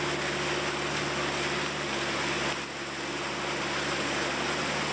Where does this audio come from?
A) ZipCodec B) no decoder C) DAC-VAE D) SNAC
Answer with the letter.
B